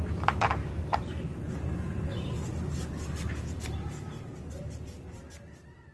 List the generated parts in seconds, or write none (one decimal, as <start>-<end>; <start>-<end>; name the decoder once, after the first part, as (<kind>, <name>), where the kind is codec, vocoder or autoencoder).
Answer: none